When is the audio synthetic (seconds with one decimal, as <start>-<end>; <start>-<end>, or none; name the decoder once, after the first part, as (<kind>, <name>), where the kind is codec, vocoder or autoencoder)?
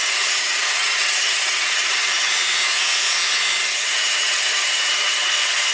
0.0-2.3 (vocoder, HiFi-GAN); 3.6-5.3